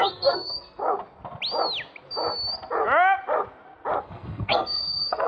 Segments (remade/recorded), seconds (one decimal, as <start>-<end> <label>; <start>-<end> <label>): 0.0-0.8 remade; 0.8-4.0 recorded; 4.0-5.3 remade